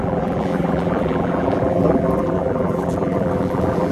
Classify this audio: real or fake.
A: fake